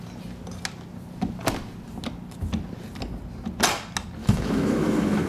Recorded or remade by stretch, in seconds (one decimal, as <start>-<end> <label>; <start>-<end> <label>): 0.0-4.2 recorded; 4.2-5.3 remade